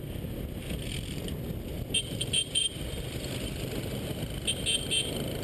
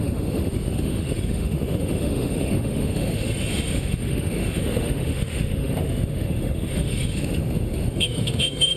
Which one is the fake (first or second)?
second